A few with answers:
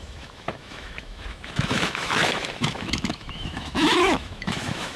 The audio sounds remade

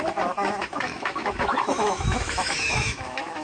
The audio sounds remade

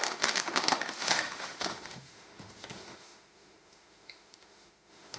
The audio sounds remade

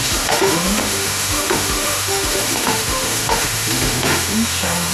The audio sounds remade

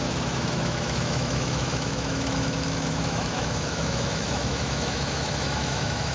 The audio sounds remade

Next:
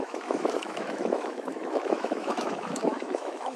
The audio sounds remade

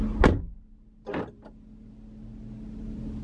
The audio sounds recorded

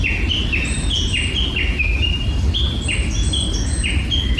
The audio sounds recorded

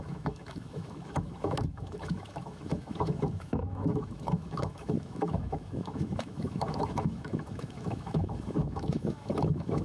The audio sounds remade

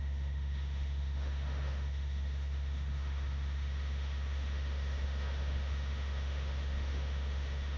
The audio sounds remade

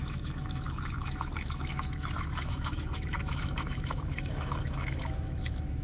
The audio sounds remade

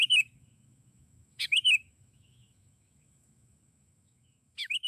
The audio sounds remade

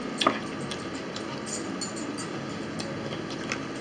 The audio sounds recorded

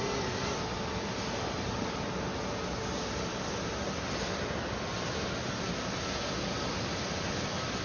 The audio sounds recorded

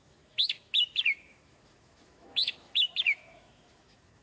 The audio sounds remade